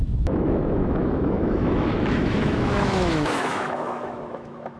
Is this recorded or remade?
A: remade